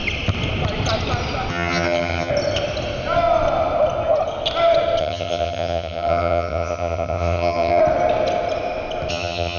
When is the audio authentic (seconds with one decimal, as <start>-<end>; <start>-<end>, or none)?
0.0-1.5; 2.3-5.0; 7.8-9.1